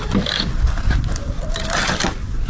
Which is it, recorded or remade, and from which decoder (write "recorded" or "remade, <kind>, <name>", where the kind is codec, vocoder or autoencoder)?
remade, vocoder, BigVGAN v2